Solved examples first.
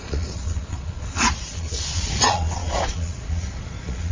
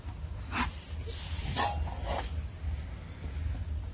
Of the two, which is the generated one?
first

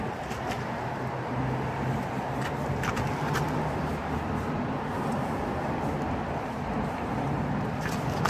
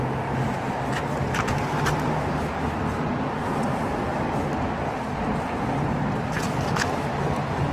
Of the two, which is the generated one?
first